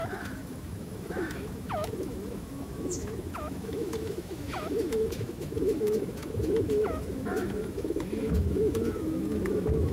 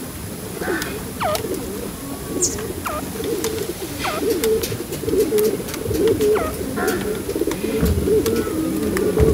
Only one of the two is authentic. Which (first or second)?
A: second